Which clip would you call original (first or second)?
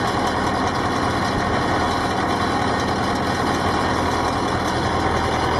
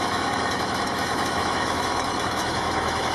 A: first